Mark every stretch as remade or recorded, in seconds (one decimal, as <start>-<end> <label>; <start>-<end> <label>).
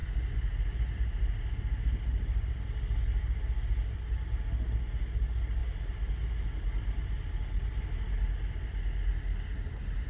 0.0-10.1 recorded